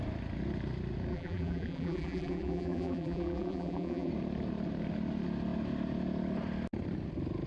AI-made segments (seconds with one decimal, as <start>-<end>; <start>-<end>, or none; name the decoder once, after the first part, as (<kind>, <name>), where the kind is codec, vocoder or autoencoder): 1.1-4.1 (vocoder, BigVGAN v2)